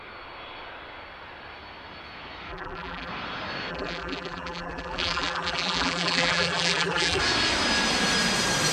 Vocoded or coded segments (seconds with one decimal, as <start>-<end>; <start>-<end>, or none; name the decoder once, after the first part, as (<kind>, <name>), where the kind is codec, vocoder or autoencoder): 2.5-3.1 (vocoder, BigVGAN v2); 3.7-7.2